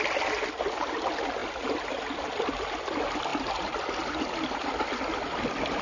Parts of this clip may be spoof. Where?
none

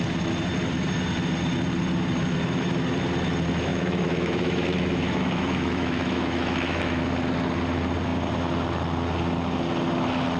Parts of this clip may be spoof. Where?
3.7-7.0

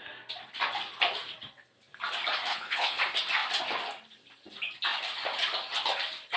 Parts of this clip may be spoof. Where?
2.5-3.0

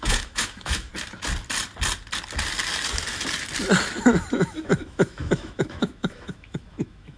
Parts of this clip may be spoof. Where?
0.0-0.9; 4.3-7.2